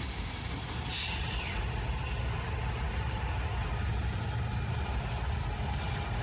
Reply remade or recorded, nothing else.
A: recorded